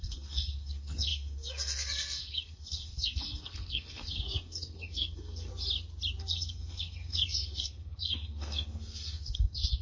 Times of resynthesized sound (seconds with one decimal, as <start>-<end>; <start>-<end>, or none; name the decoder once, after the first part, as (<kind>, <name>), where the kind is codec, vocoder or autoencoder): 0.0-5.5 (codec, SNAC); 6.2-9.8